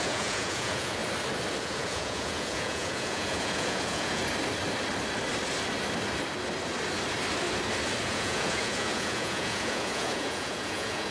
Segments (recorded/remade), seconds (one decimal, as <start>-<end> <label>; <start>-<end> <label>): 0.0-1.0 remade; 1.0-1.6 recorded; 1.6-4.2 remade; 4.2-8.0 recorded; 8.0-11.1 remade